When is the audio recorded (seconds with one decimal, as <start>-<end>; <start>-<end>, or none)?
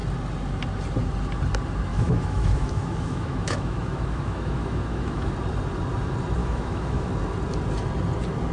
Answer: 0.0-1.9; 5.3-6.4; 7.1-8.5